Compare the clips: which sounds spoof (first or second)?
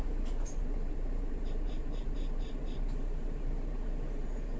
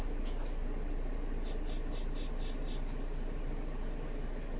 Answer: first